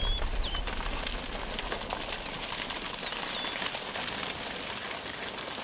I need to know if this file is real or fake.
real